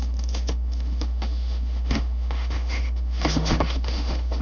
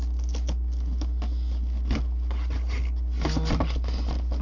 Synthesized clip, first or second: first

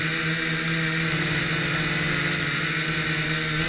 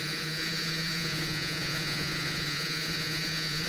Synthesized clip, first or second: second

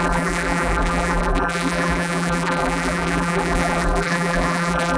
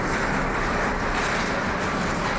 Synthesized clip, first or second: first